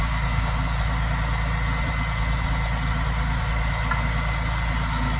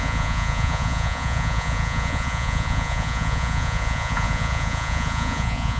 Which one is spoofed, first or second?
second